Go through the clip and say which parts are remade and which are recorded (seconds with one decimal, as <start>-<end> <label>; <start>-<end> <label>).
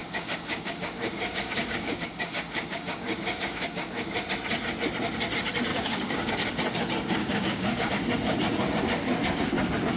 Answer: 0.0-4.0 remade; 4.0-5.7 recorded; 5.7-6.3 remade; 6.3-7.2 recorded; 7.2-7.9 remade; 7.9-10.0 recorded